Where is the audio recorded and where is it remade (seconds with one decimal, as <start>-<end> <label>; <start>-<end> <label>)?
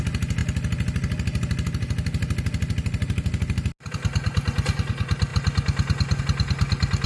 0.0-7.1 recorded